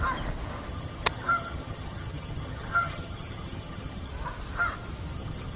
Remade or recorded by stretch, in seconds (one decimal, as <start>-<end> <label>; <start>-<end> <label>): 0.0-0.7 recorded; 0.7-4.1 remade; 4.1-5.1 recorded; 5.1-5.6 remade